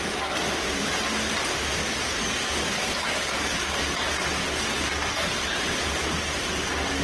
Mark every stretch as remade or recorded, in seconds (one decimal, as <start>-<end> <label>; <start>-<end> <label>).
0.0-1.8 recorded; 1.8-3.9 remade; 3.9-7.0 recorded